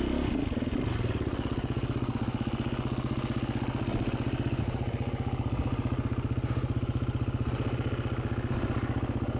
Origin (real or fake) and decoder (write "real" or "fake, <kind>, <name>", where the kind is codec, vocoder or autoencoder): real